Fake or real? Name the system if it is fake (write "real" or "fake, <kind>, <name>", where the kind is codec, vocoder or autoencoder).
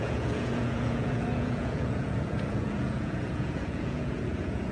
fake, vocoder, Vocos